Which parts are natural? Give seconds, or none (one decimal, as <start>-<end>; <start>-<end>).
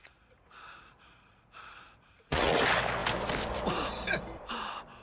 2.6-5.0